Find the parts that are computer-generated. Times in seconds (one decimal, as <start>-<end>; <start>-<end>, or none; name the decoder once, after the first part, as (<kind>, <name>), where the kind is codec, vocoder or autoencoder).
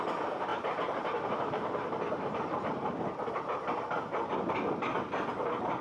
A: 0.5-4.0 (vocoder, BigVGAN v2)